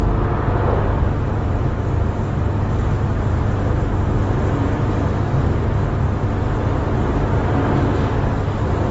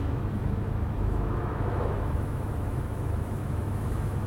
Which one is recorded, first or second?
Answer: first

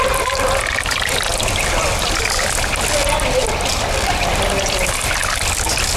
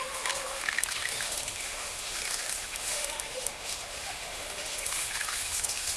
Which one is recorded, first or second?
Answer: first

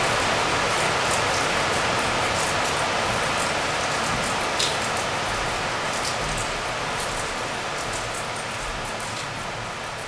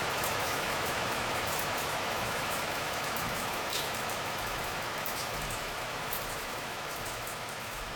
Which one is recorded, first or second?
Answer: first